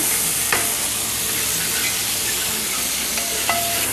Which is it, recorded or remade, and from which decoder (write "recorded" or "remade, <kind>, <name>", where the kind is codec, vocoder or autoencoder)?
recorded